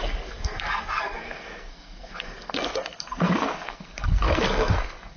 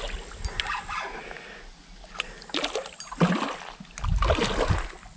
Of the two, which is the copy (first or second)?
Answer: first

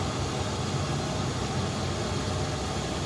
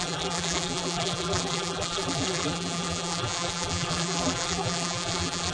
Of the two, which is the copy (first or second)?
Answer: second